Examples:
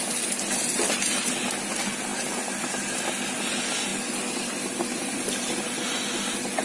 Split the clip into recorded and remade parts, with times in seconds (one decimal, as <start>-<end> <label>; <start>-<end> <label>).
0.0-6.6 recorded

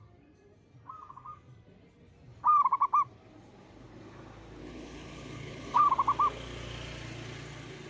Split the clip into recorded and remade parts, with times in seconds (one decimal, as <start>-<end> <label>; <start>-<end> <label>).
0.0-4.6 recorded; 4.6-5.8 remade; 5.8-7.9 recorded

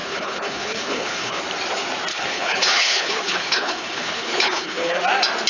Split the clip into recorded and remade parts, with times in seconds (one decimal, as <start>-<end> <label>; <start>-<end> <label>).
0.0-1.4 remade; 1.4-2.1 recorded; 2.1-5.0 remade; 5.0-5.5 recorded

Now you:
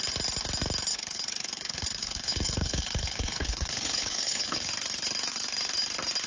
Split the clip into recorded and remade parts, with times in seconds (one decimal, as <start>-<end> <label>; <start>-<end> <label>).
0.0-0.9 recorded; 0.9-4.7 remade; 4.7-6.3 recorded